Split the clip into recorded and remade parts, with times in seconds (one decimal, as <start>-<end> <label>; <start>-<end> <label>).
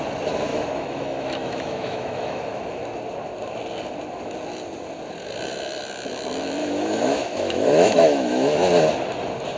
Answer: 0.0-0.5 recorded; 0.5-2.8 remade; 2.8-6.6 recorded; 6.6-8.7 remade; 8.7-9.6 recorded